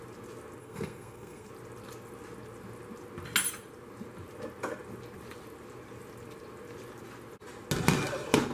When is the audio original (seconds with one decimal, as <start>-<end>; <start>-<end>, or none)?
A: 0.0-0.6; 1.5-8.5